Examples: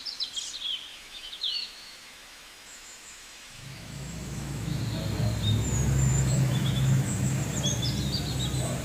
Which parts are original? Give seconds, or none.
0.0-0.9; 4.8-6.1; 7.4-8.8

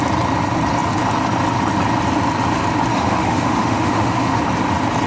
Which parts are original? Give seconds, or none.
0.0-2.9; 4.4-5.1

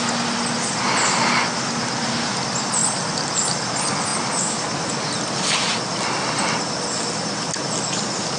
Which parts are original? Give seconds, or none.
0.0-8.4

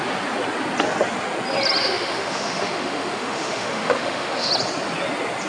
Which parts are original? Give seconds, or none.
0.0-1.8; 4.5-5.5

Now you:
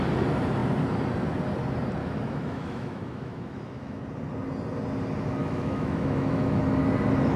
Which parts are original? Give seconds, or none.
0.0-2.0; 4.0-5.4; 6.6-7.4

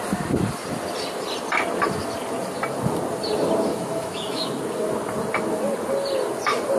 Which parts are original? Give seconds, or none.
0.0-3.7; 4.6-6.8

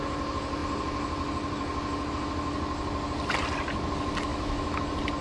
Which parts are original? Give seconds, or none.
0.0-4.3; 4.8-5.2